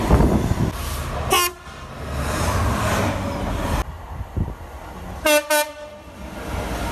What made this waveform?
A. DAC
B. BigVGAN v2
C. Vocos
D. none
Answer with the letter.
D